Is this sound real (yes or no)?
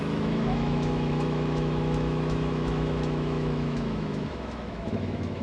no